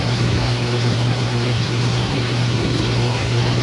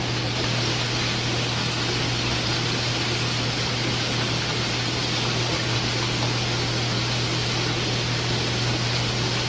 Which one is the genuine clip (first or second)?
second